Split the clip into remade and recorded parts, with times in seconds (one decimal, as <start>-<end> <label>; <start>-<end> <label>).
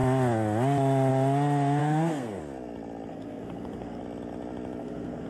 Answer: 0.0-1.8 recorded; 1.8-2.4 remade; 2.4-3.1 recorded; 3.1-4.0 remade; 4.0-4.8 recorded; 4.8-5.3 remade